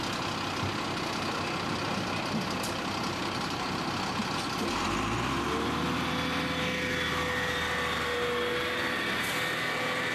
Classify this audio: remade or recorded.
recorded